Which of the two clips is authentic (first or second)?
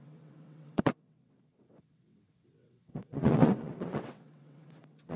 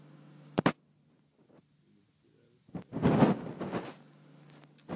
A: second